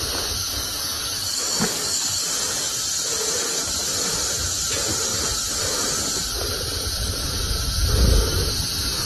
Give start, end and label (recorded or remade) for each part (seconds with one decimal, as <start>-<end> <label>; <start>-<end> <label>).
0.0-0.4 recorded; 0.4-2.2 remade; 2.2-9.1 recorded